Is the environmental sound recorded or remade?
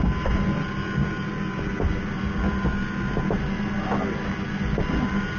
recorded